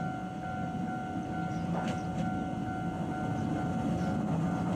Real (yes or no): yes